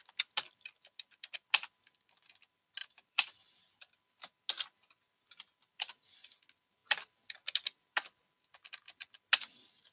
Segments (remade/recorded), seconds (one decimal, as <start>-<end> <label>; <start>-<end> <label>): 0.0-2.8 recorded; 2.8-3.9 remade; 3.9-9.9 recorded

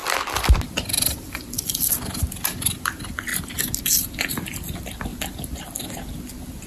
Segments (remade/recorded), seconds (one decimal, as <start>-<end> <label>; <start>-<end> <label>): 0.0-1.2 remade; 1.2-3.3 recorded; 3.3-3.8 remade; 3.8-5.1 recorded; 5.1-5.6 remade; 5.6-6.7 recorded

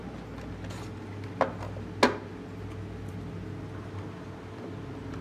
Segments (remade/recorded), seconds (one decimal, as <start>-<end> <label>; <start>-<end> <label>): 0.0-5.2 recorded

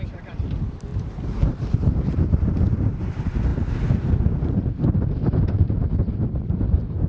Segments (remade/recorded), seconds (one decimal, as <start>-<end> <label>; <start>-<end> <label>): 0.0-0.9 recorded; 0.9-1.6 remade; 1.6-3.5 recorded; 3.5-7.1 remade

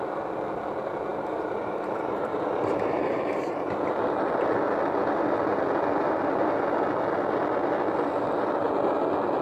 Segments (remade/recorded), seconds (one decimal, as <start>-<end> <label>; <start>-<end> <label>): 0.0-1.1 recorded; 1.1-3.7 remade; 3.7-9.4 recorded

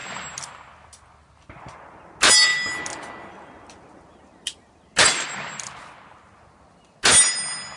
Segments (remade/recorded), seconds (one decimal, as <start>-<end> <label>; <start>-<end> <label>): 0.0-7.8 recorded

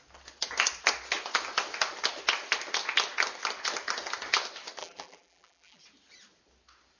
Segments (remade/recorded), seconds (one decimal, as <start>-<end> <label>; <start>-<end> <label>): 0.0-4.8 recorded; 4.8-5.8 remade; 5.8-7.0 recorded

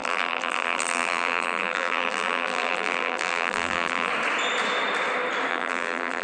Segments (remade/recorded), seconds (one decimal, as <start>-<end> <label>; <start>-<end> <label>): 0.0-4.1 remade; 4.1-5.5 recorded; 5.5-6.2 remade